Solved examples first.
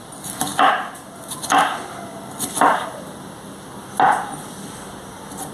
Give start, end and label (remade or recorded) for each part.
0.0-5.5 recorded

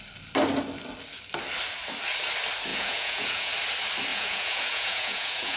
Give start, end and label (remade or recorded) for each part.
0.0-2.7 recorded; 2.7-3.5 remade; 3.5-4.1 recorded; 4.1-5.6 remade